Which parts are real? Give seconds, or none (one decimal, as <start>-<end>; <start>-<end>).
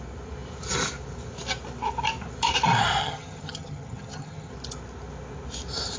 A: 0.0-3.0; 4.5-6.0